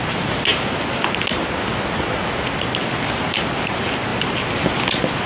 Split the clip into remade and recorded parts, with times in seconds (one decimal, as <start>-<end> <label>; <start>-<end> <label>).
0.0-5.3 recorded